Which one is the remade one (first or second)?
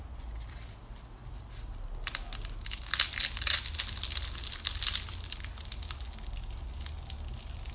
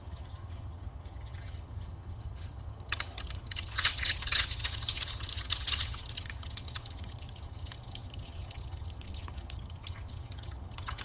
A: second